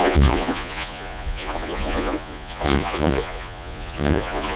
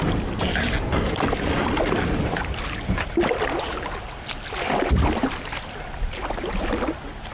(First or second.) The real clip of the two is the second